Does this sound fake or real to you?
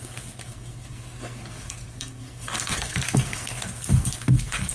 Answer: fake